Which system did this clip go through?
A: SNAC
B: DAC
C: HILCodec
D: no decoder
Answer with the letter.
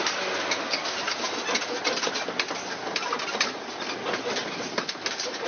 D